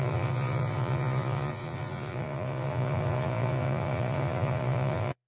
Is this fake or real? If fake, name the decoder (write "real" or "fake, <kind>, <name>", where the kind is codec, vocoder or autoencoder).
fake, vocoder, Vocos